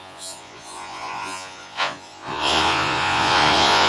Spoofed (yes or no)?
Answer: yes